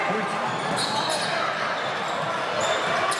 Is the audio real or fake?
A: real